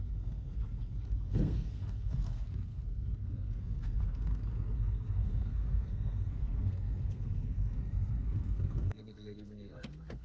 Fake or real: fake